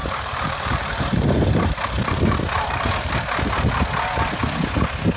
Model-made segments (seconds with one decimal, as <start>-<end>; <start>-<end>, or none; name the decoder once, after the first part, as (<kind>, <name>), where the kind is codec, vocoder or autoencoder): 0.0-3.1 (vocoder, BigVGAN v2)